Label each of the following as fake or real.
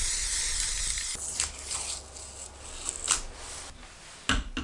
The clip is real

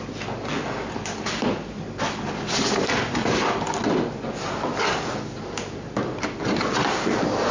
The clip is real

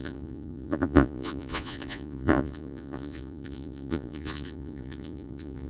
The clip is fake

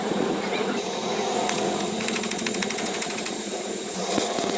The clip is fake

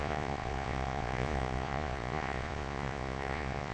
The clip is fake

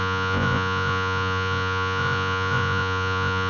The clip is fake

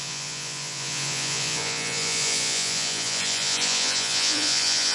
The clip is fake